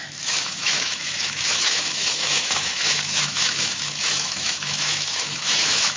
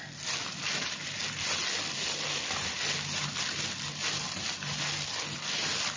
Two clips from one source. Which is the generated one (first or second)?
first